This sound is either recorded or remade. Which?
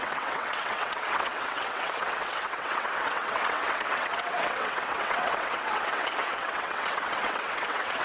remade